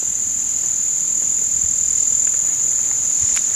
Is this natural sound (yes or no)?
yes